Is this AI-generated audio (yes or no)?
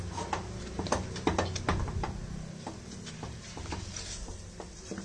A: no